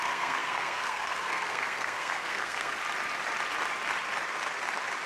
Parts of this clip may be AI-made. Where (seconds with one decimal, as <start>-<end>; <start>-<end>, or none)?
0.0-2.8